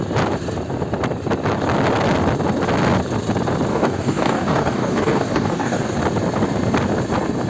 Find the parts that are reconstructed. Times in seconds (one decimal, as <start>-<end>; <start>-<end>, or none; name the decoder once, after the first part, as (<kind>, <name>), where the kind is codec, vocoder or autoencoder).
3.7-6.0 (codec, DAC)